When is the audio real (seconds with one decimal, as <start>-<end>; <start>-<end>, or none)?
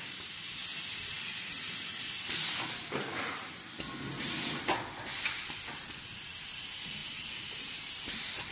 0.0-8.5